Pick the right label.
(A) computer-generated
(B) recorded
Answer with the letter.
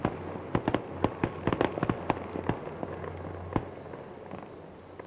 B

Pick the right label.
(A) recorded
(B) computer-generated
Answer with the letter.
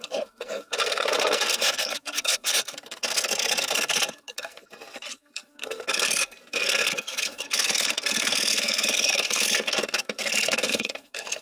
B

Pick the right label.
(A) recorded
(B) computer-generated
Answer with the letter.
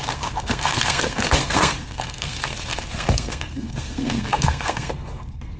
B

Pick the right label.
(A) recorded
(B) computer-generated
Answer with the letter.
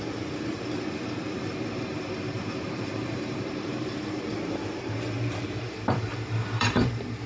B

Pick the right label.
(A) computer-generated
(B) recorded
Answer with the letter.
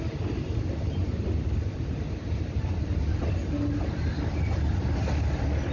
B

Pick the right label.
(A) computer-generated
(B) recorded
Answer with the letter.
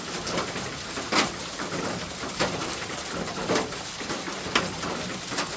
B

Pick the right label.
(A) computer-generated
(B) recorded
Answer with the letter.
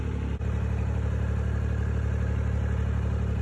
B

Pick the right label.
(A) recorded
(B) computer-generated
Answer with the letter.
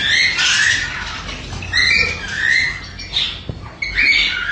A